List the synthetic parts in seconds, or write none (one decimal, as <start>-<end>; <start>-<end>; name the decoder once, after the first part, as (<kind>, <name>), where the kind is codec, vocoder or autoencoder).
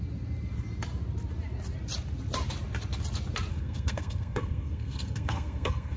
3.5-6.0 (codec, SNAC)